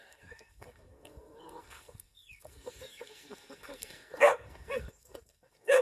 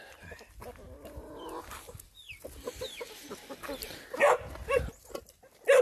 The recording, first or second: second